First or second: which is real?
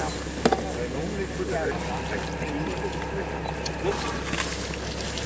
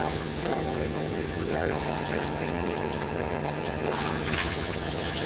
first